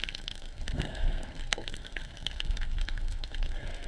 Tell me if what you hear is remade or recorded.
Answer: remade